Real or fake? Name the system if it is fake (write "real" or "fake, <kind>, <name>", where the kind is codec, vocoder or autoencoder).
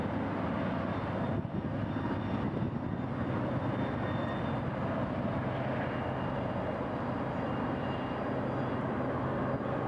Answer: real